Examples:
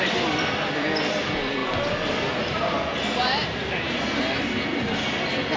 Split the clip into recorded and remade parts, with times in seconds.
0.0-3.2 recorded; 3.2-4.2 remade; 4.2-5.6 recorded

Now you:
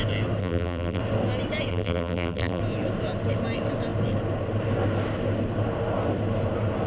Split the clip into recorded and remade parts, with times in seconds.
0.0-0.4 recorded; 0.4-1.0 remade; 1.0-1.7 recorded; 1.7-2.6 remade; 2.6-6.9 recorded

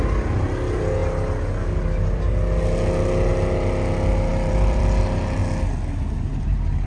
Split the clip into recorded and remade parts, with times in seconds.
0.0-4.3 recorded; 4.3-5.0 remade; 5.0-6.9 recorded

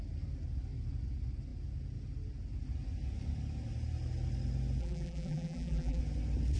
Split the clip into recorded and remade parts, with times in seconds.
0.0-4.8 recorded; 4.8-6.0 remade; 6.0-6.6 recorded

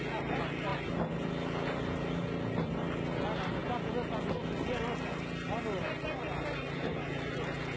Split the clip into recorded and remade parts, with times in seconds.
0.0-7.8 recorded

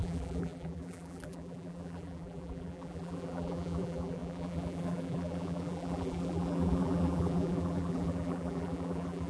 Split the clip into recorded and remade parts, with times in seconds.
0.0-9.3 remade